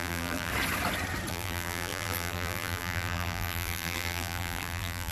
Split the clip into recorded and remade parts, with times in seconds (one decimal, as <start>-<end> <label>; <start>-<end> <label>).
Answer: 0.0-0.5 remade; 0.5-1.3 recorded; 1.3-5.1 remade